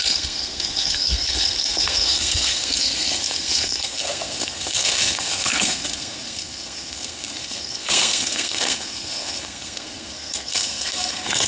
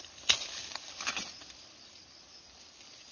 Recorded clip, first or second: second